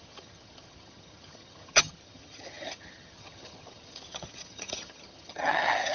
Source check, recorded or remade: remade